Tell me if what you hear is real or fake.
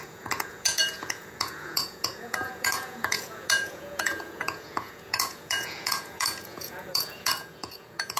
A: fake